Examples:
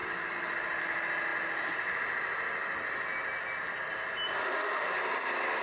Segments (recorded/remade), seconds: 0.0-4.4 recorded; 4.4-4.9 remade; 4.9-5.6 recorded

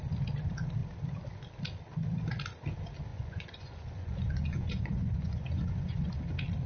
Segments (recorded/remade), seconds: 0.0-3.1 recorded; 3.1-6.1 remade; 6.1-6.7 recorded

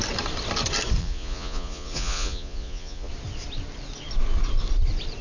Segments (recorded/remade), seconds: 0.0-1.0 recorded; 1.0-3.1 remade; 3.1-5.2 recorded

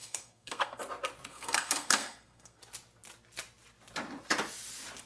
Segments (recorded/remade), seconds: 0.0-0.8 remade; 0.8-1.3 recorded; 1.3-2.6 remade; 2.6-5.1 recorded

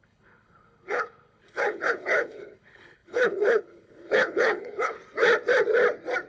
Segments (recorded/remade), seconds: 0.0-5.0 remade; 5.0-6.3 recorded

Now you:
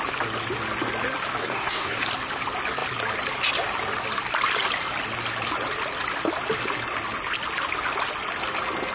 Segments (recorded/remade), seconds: 0.0-1.4 recorded; 1.4-2.0 remade; 2.0-8.9 recorded

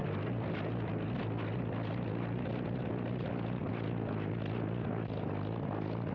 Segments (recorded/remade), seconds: 0.0-6.1 recorded

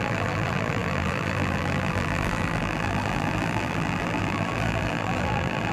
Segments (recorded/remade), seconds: 0.0-5.7 remade